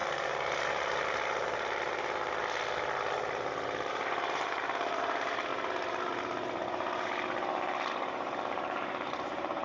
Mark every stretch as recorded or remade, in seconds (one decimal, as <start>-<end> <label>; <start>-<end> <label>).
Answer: 0.0-3.9 recorded; 3.9-5.5 remade; 5.5-7.9 recorded; 7.9-9.6 remade